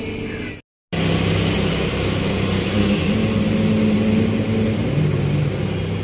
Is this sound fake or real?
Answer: real